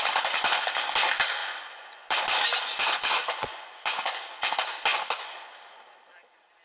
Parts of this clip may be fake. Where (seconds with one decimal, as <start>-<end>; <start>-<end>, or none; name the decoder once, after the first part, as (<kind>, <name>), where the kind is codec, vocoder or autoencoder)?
1.4-4.5 (vocoder, Vocos); 4.9-5.4